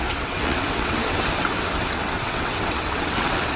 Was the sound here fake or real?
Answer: fake